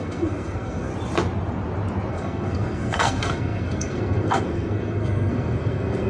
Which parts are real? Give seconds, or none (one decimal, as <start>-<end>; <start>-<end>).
0.9-2.1